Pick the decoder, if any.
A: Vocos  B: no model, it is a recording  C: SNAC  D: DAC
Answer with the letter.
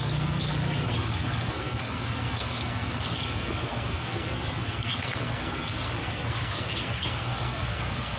C